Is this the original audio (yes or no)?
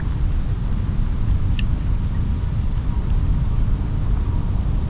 yes